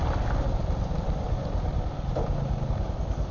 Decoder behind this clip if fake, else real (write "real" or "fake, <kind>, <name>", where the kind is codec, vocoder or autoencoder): real